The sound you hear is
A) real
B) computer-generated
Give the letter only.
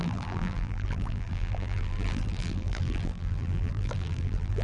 B